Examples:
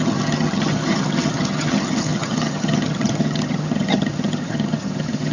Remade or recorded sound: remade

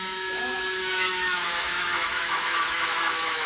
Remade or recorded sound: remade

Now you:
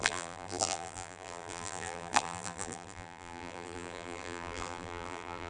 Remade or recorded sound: remade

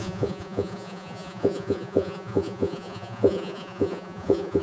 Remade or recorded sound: remade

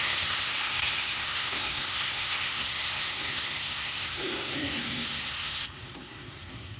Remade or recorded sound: remade